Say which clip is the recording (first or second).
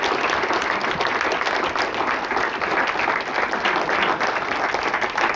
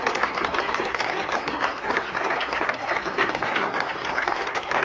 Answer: first